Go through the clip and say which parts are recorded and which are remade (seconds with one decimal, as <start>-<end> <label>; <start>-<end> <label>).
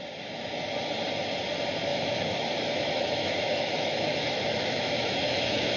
0.0-1.9 recorded; 1.9-5.8 remade